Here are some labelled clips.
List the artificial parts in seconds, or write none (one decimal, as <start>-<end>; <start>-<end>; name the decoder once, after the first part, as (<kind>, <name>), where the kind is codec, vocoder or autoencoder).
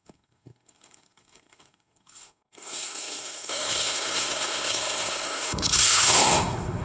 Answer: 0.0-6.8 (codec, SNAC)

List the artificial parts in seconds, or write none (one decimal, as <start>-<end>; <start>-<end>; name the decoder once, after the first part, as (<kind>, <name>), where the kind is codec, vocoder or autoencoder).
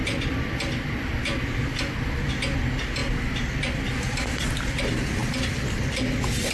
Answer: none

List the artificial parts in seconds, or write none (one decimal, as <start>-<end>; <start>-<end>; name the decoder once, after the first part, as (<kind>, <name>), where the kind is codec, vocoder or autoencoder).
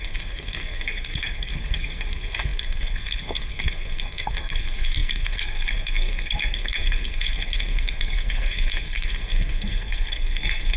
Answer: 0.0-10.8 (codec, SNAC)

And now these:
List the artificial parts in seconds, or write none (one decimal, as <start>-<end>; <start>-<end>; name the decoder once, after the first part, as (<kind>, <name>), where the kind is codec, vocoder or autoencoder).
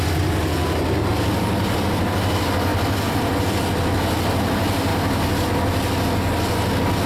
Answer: none